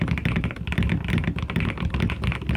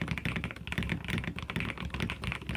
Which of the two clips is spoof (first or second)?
first